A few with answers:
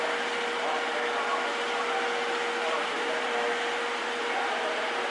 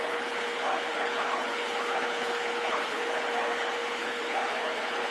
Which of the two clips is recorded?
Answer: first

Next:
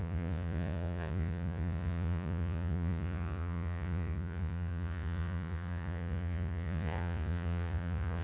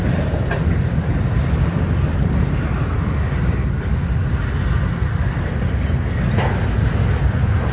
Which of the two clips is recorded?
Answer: second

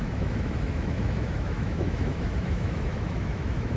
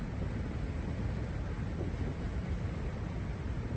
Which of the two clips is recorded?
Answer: second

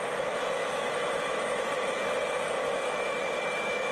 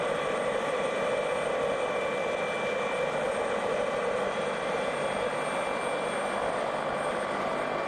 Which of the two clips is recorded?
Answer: second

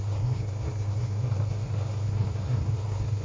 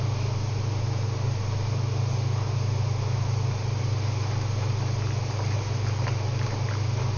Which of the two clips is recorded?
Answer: second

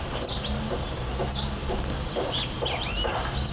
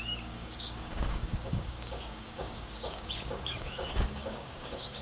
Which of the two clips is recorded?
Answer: first